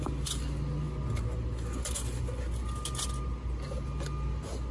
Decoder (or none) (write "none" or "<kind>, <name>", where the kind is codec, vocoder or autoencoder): none